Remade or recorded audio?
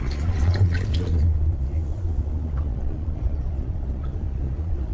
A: remade